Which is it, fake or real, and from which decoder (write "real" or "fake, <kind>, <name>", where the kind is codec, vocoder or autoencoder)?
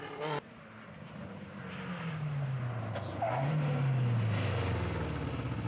real